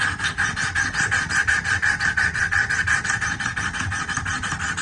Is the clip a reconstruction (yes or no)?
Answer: no